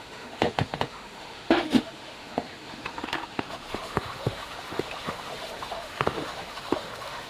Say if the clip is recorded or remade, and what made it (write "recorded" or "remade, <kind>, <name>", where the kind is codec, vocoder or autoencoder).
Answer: remade, autoencoder, DAC-VAE